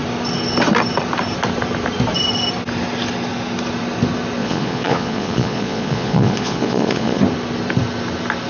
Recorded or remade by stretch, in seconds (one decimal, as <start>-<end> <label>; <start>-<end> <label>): 0.0-4.4 recorded; 4.4-7.2 remade; 7.2-8.5 recorded